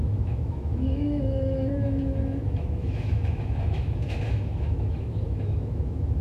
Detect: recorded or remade remade